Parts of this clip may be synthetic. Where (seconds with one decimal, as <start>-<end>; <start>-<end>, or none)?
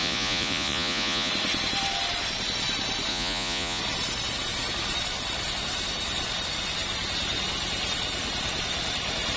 0.0-1.3; 3.1-3.8